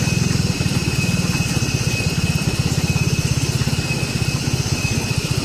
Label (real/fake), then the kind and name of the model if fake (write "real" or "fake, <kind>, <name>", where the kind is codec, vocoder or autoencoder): real